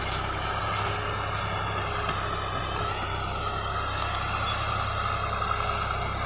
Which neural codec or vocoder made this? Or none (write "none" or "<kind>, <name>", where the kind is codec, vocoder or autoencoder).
vocoder, BigVGAN v2